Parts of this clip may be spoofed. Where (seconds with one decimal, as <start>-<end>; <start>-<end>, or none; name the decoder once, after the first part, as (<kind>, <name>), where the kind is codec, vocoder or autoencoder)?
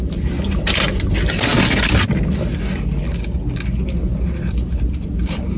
none